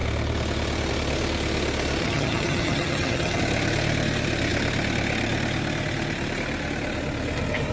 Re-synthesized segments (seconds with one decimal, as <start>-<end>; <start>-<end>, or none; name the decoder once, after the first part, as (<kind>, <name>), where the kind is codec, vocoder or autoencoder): 2.0-3.4 (vocoder, HiFi-GAN)